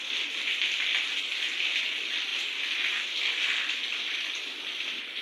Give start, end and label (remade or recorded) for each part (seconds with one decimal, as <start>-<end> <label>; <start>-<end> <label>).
0.0-5.2 recorded